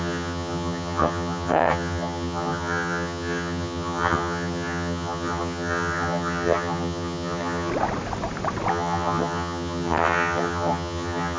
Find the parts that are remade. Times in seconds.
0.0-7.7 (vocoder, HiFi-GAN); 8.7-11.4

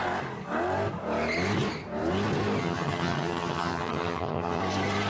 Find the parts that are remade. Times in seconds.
2.6-4.6 (vocoder, HiFi-GAN)

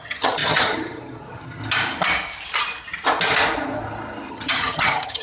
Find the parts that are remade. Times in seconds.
0.0-1.6 (vocoder, HiFi-GAN); 4.3-5.2

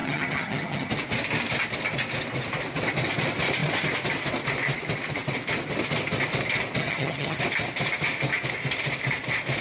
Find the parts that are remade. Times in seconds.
0.0-0.9 (vocoder, HiFi-GAN); 6.8-7.4

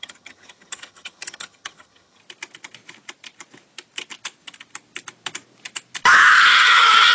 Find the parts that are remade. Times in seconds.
0.0-2.2 (vocoder, HiFi-GAN); 6.5-7.1